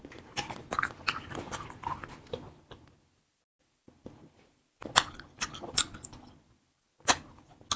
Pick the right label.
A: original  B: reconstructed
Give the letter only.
A